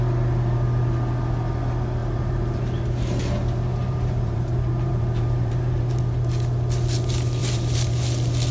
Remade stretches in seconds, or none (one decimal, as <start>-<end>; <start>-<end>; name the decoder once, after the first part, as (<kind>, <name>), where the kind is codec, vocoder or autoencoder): 2.0-2.7 (vocoder, BigVGAN v2); 3.7-6.0; 7.4-7.9